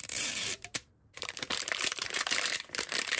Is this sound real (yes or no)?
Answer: no